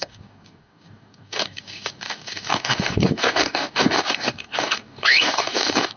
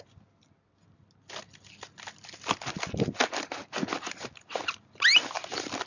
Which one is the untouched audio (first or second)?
second